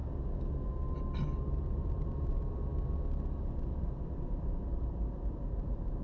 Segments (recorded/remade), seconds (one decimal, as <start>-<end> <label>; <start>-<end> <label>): 0.0-1.6 recorded; 1.6-2.7 remade; 2.7-3.4 recorded; 3.4-6.0 remade